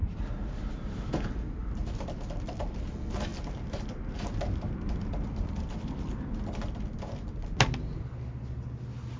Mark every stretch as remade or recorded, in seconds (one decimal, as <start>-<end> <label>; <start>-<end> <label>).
0.0-9.2 recorded